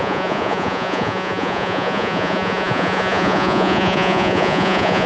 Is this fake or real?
fake